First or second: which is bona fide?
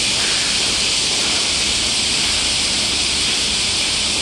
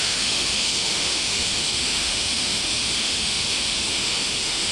first